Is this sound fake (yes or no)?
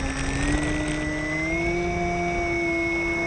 no